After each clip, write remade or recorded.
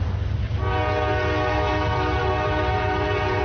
recorded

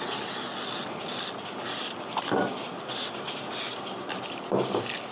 recorded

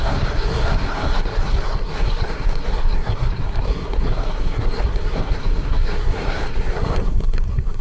remade